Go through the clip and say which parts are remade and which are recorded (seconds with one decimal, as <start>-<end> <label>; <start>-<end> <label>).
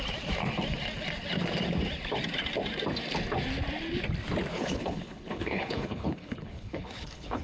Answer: 0.0-4.5 recorded; 4.5-7.4 remade